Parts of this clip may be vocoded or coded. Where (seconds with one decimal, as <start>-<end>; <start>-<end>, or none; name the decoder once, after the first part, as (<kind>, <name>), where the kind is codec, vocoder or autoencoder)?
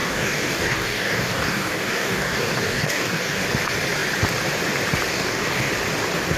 0.0-3.4 (codec, DAC); 5.1-5.7